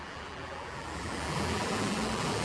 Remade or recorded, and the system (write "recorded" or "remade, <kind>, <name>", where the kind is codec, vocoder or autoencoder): remade, vocoder, BigVGAN v2